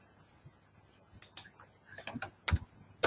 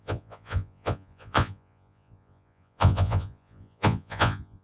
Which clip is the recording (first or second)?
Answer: first